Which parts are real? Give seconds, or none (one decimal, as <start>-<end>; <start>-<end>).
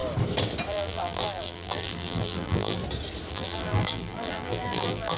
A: 0.0-0.7; 2.8-3.3